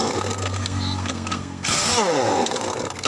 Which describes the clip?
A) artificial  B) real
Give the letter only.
A